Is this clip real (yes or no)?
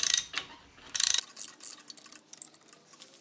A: yes